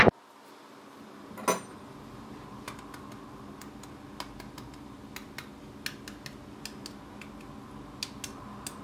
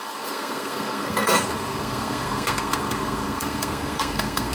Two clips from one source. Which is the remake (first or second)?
second